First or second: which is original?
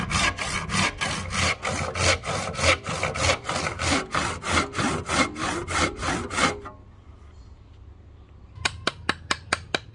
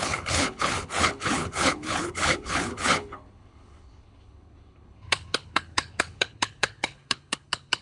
first